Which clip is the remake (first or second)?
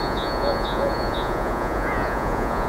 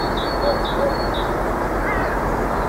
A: first